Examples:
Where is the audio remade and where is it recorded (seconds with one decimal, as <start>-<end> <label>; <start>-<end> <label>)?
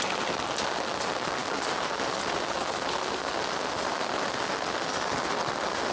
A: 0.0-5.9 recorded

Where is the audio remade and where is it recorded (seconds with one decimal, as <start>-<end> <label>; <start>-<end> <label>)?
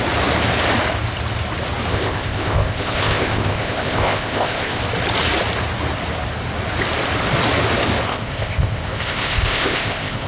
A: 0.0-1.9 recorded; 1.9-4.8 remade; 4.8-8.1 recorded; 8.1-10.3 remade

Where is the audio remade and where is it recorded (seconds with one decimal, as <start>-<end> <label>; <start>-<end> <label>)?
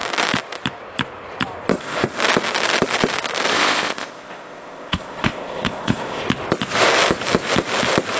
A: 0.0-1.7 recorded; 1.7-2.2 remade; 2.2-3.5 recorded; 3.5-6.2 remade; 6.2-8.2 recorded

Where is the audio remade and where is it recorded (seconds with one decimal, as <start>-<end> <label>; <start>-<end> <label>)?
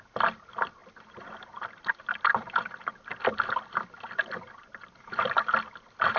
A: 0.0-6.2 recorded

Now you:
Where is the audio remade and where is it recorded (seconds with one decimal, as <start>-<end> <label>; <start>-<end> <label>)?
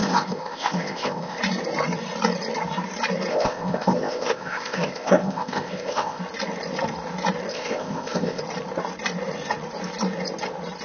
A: 0.0-1.4 remade; 1.4-3.3 recorded; 3.3-6.2 remade; 6.2-7.5 recorded; 7.5-8.4 remade; 8.4-10.8 recorded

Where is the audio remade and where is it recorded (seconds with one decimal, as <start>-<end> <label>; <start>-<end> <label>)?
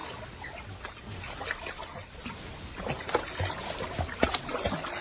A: 0.0-5.0 recorded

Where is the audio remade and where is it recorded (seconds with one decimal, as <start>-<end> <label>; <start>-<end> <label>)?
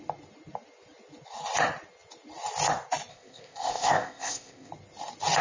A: 0.0-3.1 recorded; 3.1-4.7 remade; 4.7-5.4 recorded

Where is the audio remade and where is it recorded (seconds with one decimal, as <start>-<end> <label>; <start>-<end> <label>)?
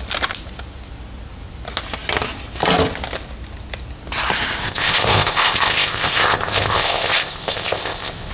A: 0.0-4.6 recorded; 4.6-8.3 remade